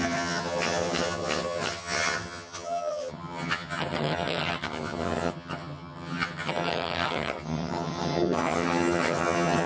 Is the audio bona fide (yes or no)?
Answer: no